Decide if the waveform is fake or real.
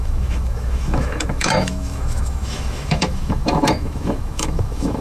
fake